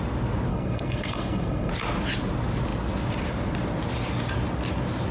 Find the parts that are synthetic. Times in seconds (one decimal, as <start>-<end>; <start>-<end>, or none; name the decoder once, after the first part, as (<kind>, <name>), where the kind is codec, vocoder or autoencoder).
0.5-1.7 (codec, SNAC)